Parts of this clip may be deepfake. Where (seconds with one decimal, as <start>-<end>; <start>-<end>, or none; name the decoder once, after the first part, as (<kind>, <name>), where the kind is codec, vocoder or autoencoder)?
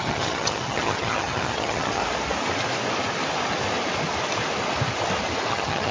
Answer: 0.0-2.0 (vocoder, HiFi-GAN); 5.5-5.9